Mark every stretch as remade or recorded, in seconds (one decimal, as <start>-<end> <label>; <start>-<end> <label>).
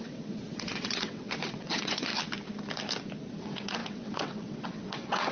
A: 0.0-2.1 remade; 2.1-3.4 recorded; 3.4-5.3 remade